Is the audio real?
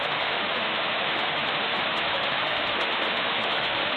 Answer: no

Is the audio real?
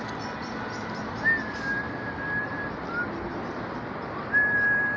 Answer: yes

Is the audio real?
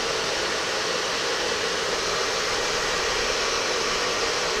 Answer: yes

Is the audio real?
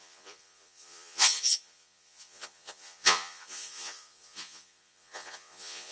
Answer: no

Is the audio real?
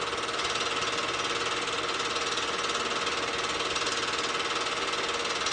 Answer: yes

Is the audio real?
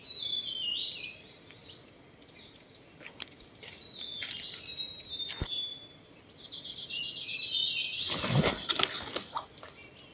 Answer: yes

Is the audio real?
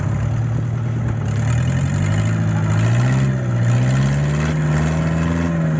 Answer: yes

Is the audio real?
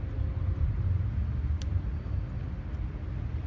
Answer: yes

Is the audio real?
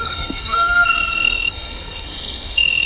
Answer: no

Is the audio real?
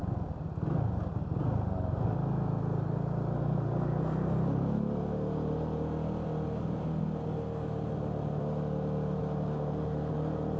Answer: yes